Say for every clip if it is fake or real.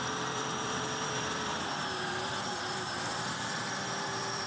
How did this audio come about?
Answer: fake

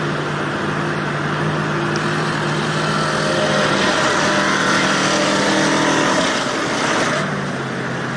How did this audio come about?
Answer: real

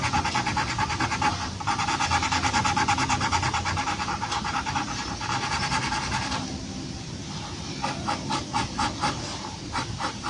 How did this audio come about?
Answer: fake